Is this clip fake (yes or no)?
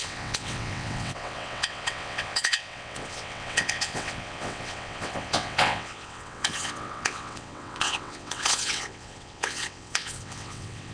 yes